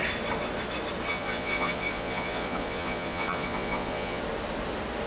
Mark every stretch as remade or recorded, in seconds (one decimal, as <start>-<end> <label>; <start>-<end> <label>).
0.0-1.1 recorded; 1.1-4.2 remade; 4.2-5.1 recorded